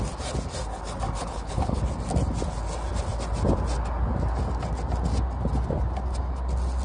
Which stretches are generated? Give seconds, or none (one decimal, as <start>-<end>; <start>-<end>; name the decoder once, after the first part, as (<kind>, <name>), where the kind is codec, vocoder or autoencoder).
1.2-1.8 (codec, HILCodec)